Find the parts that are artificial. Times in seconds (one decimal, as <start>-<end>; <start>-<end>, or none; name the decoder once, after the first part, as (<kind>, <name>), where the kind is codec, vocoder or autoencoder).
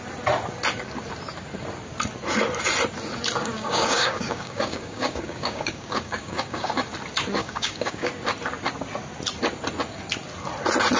3.4-6.7 (codec, DAC); 7.4-8.1